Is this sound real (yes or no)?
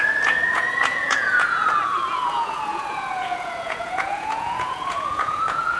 no